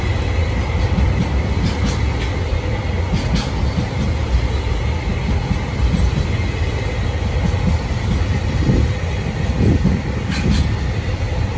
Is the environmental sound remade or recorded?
recorded